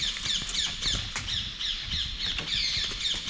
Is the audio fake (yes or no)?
no